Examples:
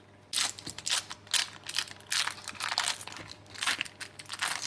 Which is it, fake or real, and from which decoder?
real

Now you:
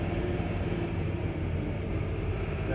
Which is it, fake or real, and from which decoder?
fake, vocoder, BigVGAN v2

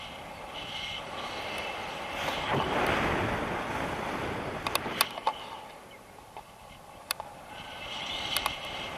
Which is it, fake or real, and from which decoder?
fake, vocoder, BigVGAN v2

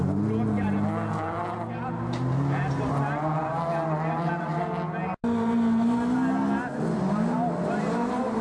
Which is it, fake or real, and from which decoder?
real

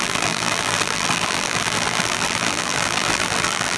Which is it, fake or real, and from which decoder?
fake, vocoder, BigVGAN v2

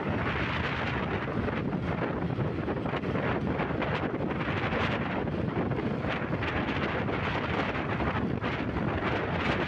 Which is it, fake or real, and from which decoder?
real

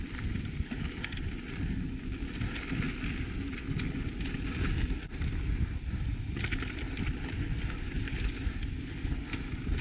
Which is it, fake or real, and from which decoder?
real